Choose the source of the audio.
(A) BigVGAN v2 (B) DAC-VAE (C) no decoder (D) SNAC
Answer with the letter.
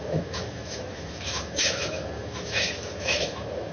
B